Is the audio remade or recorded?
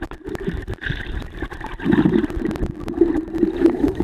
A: remade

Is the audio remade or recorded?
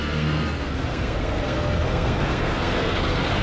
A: remade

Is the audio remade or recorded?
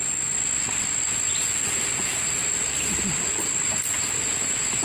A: recorded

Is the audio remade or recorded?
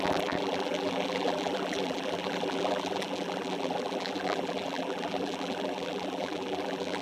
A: remade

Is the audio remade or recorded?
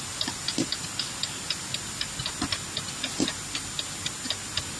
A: recorded